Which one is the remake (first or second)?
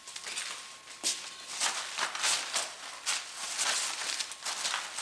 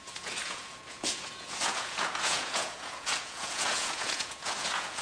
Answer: second